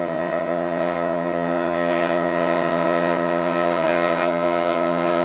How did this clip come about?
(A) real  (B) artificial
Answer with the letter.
B